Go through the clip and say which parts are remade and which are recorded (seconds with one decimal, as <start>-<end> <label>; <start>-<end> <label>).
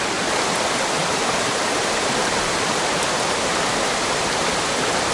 0.0-1.0 recorded; 1.0-4.1 remade; 4.1-5.1 recorded